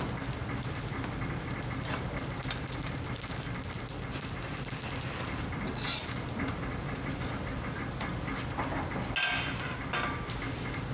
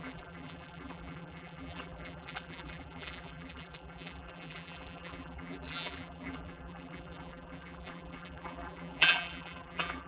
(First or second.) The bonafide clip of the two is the first